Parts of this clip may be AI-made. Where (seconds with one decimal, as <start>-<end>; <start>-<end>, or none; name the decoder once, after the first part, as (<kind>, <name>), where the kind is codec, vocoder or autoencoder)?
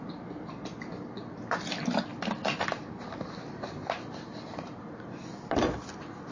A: 2.1-5.8 (vocoder, BigVGAN v2)